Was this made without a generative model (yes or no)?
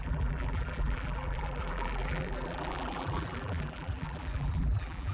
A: no